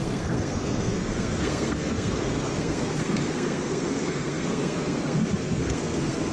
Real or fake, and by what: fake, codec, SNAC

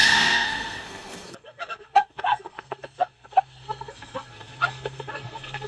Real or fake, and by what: fake, codec, SNAC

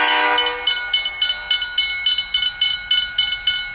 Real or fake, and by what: real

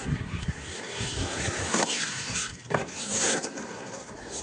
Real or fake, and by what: fake, codec, SNAC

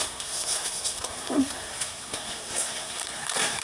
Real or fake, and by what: fake, codec, SNAC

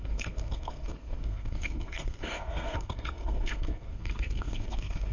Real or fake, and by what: fake, codec, SNAC